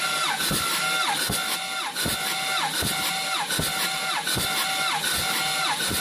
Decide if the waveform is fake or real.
real